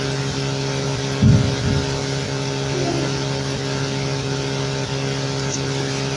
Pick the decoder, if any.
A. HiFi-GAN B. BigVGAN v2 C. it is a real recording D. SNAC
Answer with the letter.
C